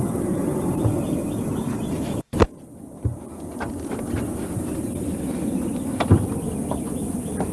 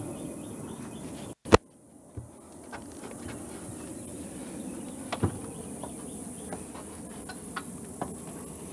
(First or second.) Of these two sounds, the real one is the second